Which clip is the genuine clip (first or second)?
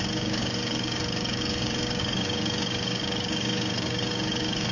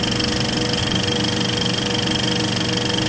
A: second